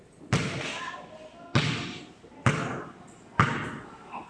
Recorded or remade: recorded